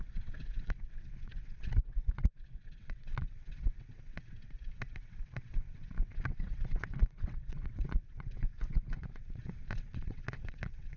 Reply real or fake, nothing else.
fake